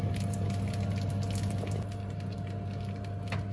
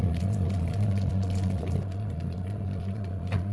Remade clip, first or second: second